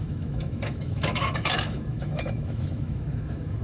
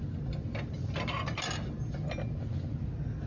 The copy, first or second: first